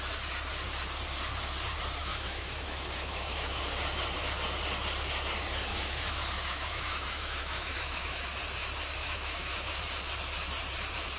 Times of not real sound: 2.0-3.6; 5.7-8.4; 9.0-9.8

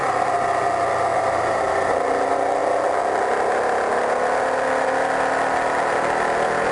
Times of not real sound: 1.1-1.9

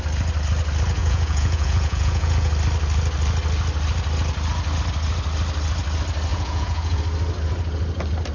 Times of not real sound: 1.0-2.5; 6.3-7.0

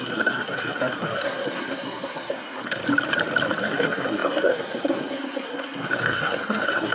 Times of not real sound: 0.0-2.8; 3.6-6.9

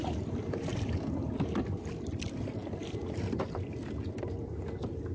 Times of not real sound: none

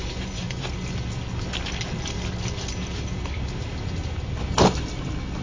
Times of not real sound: 0.0-0.6

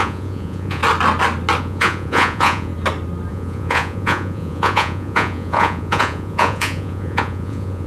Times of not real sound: 0.0-0.8; 1.6-2.7; 3.3-7.9

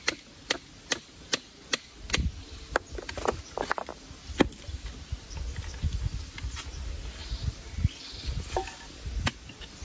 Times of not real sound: none